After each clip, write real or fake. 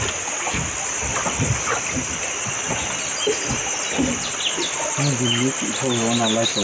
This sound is real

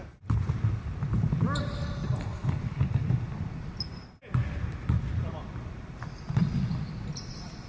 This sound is real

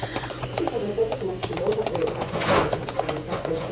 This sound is fake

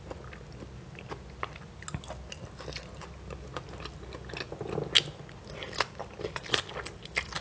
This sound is real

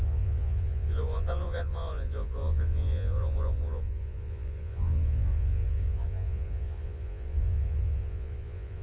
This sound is fake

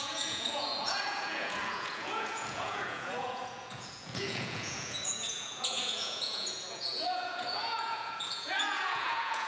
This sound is fake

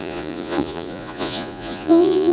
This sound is fake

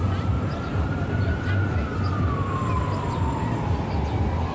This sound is real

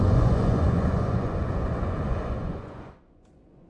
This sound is fake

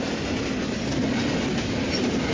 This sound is real